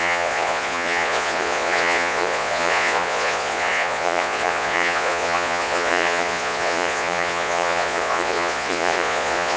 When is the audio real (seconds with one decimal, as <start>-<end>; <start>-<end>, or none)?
none